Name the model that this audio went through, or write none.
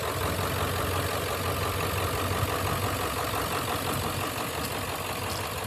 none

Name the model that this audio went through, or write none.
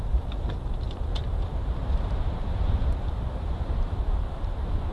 vocoder, BigVGAN v2